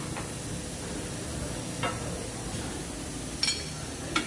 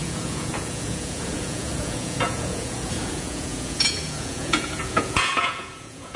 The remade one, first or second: second